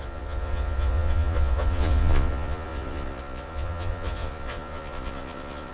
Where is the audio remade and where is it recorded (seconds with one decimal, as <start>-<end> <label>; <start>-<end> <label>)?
0.0-5.7 remade